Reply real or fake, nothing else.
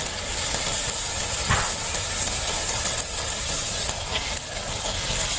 real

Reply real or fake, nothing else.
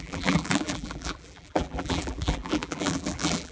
fake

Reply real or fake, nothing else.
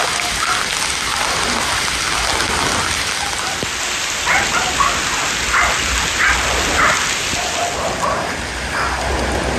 real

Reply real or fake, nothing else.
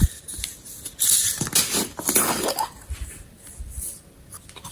real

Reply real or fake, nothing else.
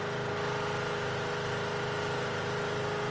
real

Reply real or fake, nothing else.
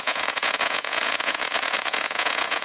fake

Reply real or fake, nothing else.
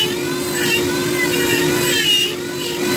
real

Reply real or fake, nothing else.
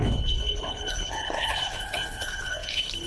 fake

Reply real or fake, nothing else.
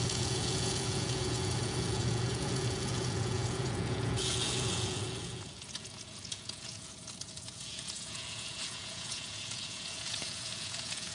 fake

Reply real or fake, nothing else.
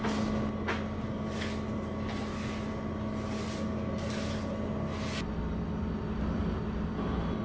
real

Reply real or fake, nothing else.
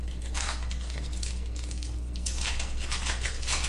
fake